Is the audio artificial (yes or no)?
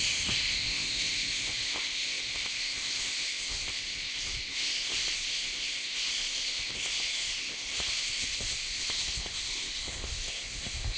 yes